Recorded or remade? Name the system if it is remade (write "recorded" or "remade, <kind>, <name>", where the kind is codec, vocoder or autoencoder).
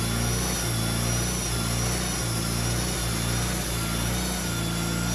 recorded